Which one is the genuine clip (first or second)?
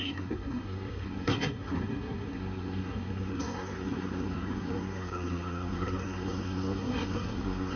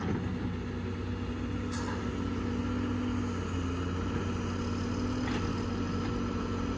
second